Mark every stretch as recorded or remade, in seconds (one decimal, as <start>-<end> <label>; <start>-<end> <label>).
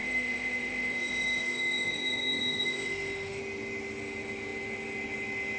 0.0-3.4 remade; 3.4-5.6 recorded